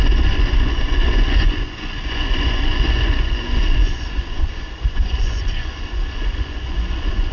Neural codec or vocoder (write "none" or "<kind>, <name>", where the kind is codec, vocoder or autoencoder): vocoder, Vocos